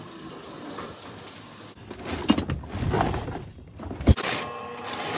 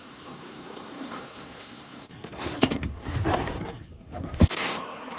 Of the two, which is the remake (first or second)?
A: second